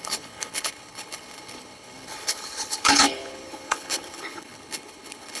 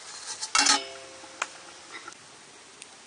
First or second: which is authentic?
second